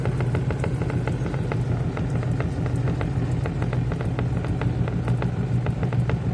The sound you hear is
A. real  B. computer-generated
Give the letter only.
A